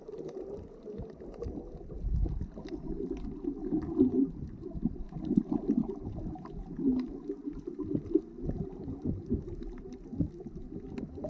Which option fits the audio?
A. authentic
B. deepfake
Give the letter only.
A